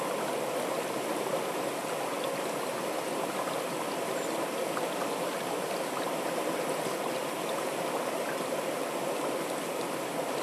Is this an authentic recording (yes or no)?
yes